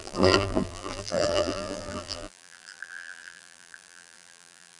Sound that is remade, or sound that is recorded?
remade